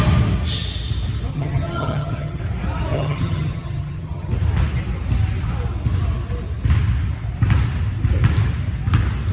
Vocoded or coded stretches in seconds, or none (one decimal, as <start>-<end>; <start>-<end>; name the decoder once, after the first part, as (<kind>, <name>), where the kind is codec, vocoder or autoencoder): 1.3-2.4 (vocoder, HiFi-GAN); 2.9-4.3